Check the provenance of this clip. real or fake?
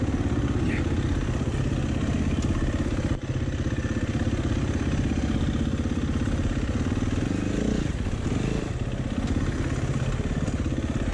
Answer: real